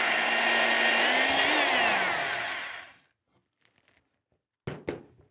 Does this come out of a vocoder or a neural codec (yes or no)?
no